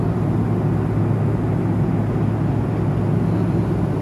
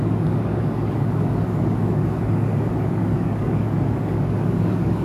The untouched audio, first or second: first